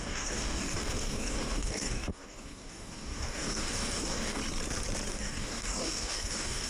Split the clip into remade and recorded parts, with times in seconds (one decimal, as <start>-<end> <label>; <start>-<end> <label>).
0.0-4.4 remade; 4.4-5.1 recorded; 5.1-6.7 remade